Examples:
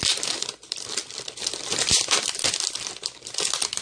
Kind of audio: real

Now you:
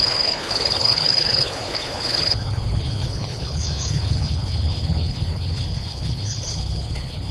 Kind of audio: fake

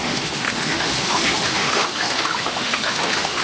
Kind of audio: fake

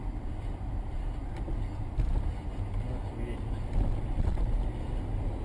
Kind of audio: real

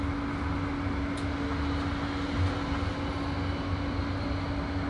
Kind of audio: real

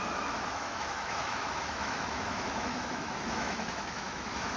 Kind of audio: fake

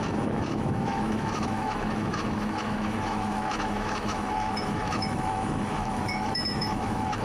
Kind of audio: fake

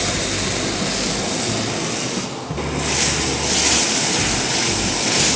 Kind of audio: real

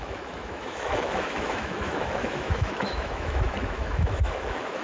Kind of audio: fake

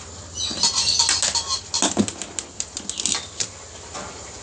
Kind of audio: real